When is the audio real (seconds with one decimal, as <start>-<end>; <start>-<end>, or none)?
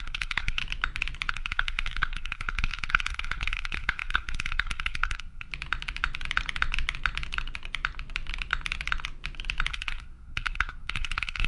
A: 0.6-1.3; 5.5-9.7